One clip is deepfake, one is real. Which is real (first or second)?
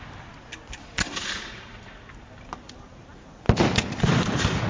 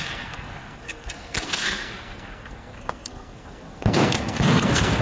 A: first